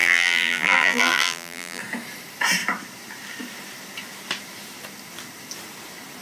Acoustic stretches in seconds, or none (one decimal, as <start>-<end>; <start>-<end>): 1.8-6.2